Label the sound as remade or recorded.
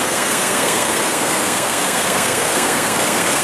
remade